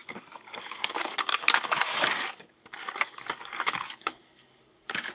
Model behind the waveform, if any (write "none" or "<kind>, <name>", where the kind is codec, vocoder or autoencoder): codec, DAC